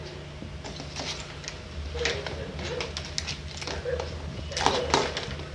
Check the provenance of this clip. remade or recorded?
recorded